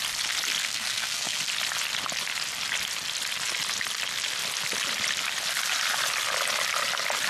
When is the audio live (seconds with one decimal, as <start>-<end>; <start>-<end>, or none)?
0.0-0.6; 1.4-7.3